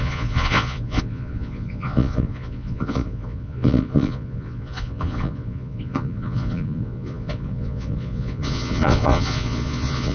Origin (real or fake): fake